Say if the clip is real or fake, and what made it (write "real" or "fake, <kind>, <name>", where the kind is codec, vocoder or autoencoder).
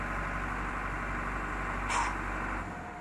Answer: real